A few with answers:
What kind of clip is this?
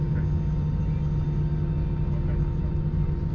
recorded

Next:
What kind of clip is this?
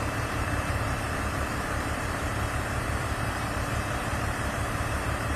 remade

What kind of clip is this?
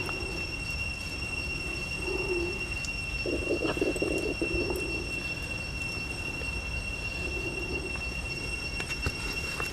recorded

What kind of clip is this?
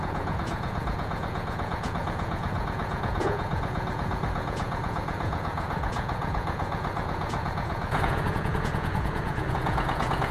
remade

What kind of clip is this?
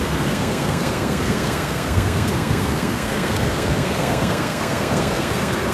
remade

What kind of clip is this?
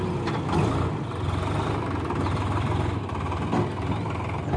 recorded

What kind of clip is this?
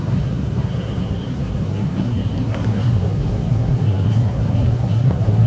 remade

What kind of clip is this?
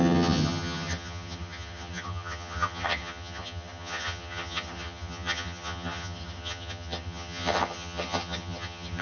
remade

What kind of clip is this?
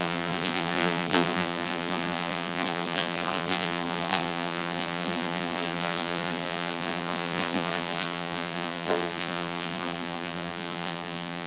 remade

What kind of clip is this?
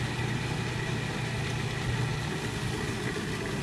recorded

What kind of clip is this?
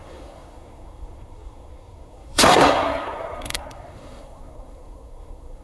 remade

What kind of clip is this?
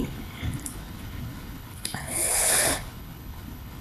remade